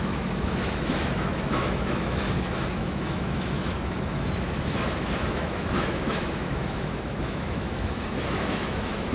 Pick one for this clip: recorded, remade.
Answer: remade